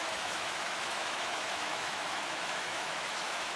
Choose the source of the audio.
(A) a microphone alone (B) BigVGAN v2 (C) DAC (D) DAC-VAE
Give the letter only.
D